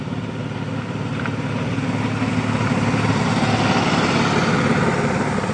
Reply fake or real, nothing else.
real